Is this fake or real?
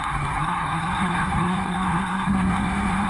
fake